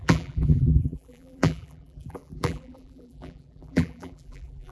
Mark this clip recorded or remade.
remade